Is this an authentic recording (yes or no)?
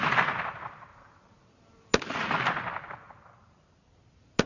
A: yes